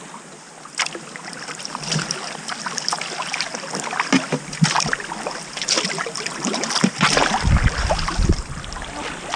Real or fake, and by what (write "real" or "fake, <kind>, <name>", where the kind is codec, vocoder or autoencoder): real